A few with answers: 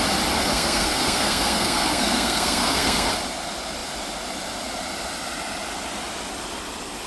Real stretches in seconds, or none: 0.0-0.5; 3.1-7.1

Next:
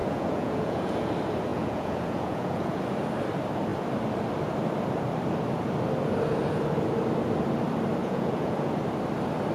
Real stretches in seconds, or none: 1.1-1.5; 2.8-8.0; 8.7-9.5

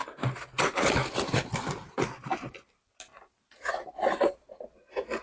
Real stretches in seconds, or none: 0.0-5.2

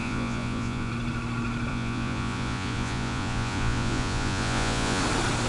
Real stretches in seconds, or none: 0.9-1.7; 5.0-5.5

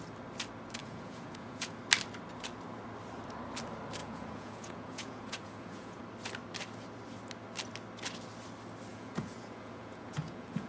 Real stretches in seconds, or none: 0.0-0.8; 1.8-4.0; 6.0-8.9

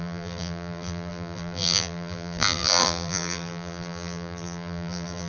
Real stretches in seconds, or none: none

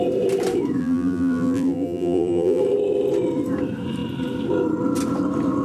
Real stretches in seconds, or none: 0.0-0.8; 2.6-5.6